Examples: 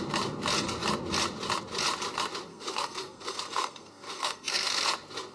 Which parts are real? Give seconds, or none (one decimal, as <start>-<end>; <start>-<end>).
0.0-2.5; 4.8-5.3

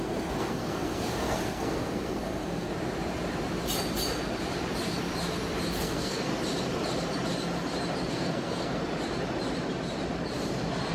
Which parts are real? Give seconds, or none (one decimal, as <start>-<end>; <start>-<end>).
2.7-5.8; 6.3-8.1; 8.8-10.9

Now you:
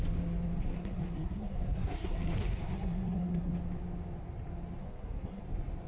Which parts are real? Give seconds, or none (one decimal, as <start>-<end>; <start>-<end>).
0.0-0.6; 3.5-4.8; 5.4-5.9